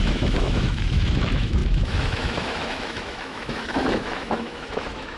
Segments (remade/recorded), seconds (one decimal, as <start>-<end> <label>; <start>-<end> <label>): 0.0-5.2 remade